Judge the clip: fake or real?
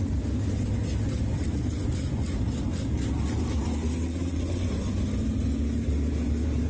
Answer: real